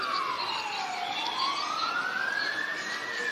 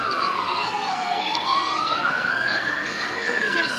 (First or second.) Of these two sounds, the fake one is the second